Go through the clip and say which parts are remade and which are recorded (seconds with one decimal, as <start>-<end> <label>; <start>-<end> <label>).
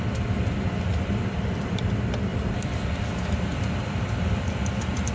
0.0-0.9 recorded; 0.9-1.8 remade; 1.8-2.3 recorded; 2.3-2.9 remade; 2.9-3.5 recorded; 3.5-5.1 remade